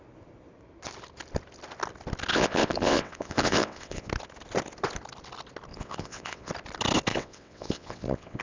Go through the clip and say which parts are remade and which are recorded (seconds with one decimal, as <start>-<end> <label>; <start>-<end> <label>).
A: 0.0-2.3 recorded; 2.3-4.1 remade; 4.1-5.7 recorded; 5.7-6.5 remade; 6.5-7.1 recorded; 7.1-8.4 remade